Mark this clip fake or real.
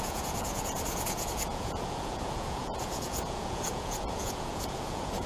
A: fake